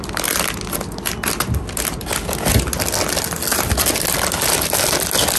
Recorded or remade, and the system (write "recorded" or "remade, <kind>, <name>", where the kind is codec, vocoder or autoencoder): recorded